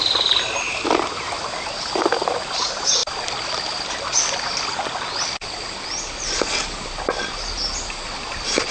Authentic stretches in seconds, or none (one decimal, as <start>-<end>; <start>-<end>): 0.0-8.7